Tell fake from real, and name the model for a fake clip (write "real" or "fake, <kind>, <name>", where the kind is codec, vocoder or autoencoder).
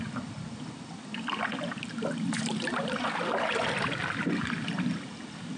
real